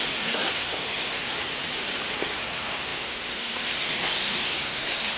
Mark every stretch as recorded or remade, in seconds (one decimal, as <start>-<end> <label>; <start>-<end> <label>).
0.0-1.6 remade; 1.6-2.1 recorded; 2.1-5.2 remade